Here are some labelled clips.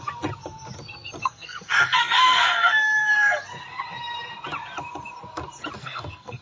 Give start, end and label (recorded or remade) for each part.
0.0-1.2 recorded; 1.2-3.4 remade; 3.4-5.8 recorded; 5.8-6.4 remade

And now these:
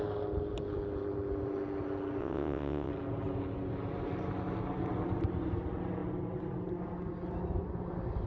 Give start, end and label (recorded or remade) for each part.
0.0-2.2 recorded; 2.2-2.9 remade; 2.9-8.3 recorded

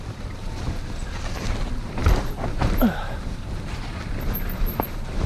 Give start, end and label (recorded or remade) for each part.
0.0-5.3 remade

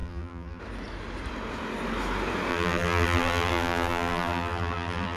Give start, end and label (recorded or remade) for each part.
0.0-0.6 remade; 0.6-2.5 recorded; 2.5-5.2 remade

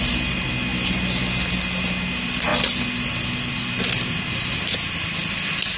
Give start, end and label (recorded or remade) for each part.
0.0-5.8 recorded

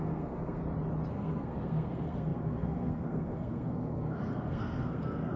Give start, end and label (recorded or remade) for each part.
0.0-0.6 remade; 0.6-1.1 recorded; 1.1-5.4 remade

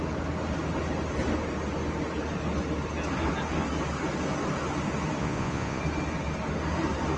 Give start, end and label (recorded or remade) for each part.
0.0-5.2 recorded; 5.2-5.8 remade; 5.8-7.2 recorded